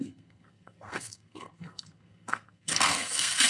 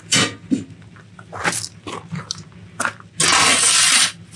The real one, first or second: second